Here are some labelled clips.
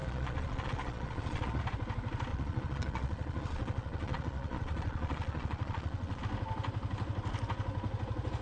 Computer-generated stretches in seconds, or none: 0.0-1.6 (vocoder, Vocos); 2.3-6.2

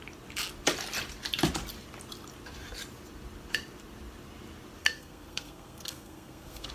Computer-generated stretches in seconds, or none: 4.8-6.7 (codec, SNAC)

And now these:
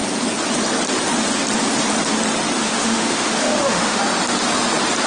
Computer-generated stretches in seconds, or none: 2.6-4.0 (autoencoder, DAC-VAE)

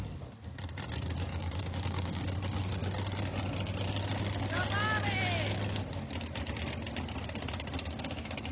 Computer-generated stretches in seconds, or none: 1.3-2.2 (codec, DAC)

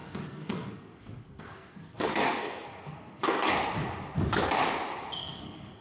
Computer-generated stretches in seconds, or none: 0.0-3.5 (codec, SNAC); 5.2-5.8

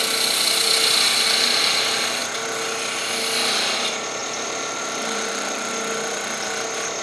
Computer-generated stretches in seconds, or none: 4.2-5.7 (vocoder, BigVGAN v2)

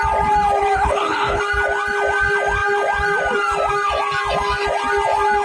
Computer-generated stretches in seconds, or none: 0.6-1.4 (codec, HILCodec)

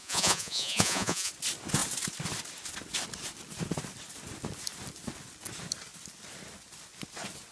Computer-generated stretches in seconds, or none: 0.0-1.3 (vocoder, Vocos)